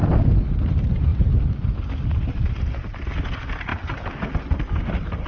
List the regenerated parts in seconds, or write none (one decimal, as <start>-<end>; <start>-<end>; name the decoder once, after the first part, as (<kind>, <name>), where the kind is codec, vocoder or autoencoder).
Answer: none